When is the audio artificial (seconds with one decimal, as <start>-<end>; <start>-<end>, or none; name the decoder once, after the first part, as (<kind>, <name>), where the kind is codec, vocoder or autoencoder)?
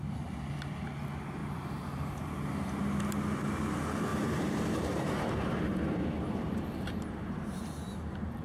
1.4-2.8 (vocoder, BigVGAN v2); 4.1-7.6